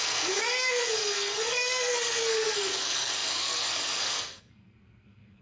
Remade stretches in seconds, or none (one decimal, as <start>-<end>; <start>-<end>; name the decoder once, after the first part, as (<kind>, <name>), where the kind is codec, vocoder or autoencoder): 0.0-5.4 (codec, SNAC)